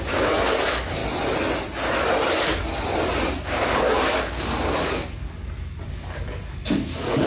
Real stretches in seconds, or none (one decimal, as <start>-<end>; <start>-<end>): 1.0-3.3

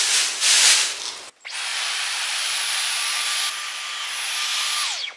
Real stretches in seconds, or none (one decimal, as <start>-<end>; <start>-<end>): 0.0-1.7; 3.4-5.2